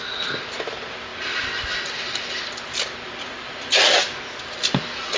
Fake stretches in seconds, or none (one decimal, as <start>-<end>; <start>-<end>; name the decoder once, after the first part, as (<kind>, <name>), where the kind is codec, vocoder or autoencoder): none